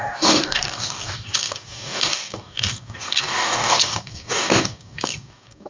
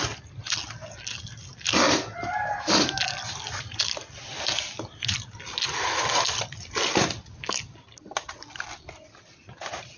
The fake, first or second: first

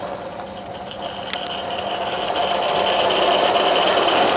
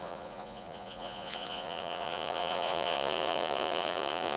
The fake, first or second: second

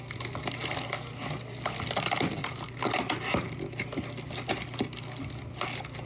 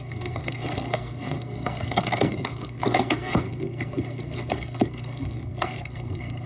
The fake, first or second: second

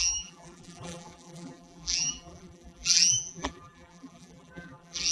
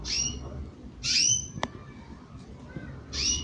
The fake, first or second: first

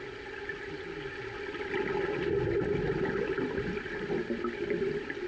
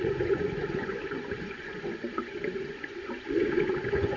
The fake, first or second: second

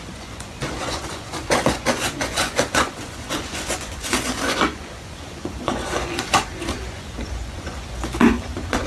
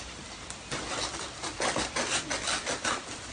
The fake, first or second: first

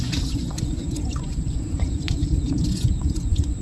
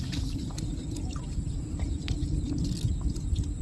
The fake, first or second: first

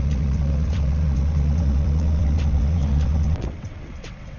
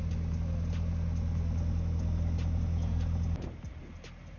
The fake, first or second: first